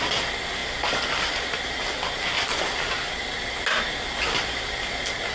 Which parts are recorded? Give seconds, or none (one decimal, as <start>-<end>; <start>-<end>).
0.0-5.3